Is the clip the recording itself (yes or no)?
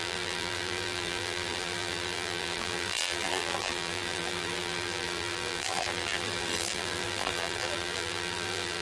no